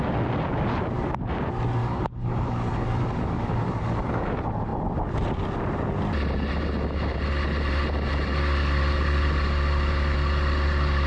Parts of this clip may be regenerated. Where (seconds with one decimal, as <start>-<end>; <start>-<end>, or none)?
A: 1.8-4.3